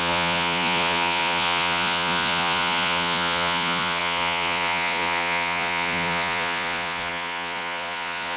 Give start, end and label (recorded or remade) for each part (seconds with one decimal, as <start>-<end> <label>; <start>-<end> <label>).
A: 0.0-8.4 remade

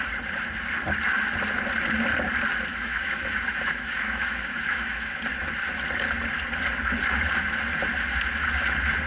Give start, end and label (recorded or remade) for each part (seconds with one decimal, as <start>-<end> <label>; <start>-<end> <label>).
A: 0.0-2.7 recorded; 2.7-5.1 remade; 5.1-9.1 recorded

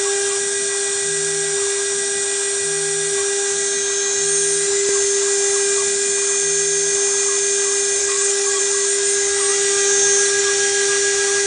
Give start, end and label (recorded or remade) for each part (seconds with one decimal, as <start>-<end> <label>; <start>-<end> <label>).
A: 0.0-8.0 recorded; 8.0-8.6 remade; 8.6-11.5 recorded

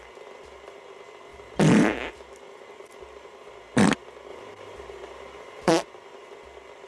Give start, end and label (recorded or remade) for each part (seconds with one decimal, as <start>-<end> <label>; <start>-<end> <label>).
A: 0.0-1.3 recorded; 1.3-2.1 remade; 2.1-4.3 recorded; 4.3-5.7 remade; 5.7-6.9 recorded

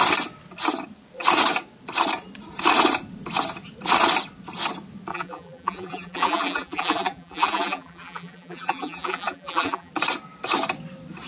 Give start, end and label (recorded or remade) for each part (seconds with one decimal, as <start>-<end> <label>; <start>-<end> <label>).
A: 0.0-5.1 recorded; 5.1-9.9 remade; 9.9-11.3 recorded

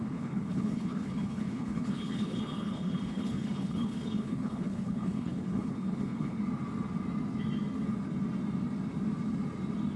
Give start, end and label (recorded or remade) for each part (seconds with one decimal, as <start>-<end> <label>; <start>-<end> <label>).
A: 0.0-6.4 remade; 6.4-10.0 recorded